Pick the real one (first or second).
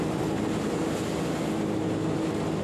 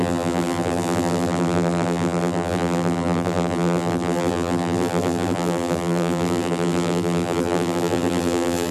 first